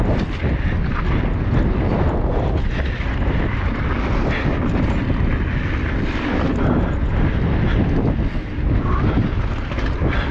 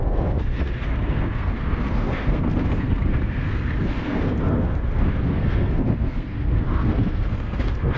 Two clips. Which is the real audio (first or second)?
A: first